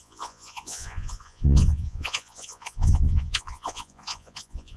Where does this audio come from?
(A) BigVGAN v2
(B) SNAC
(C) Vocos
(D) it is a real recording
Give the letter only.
C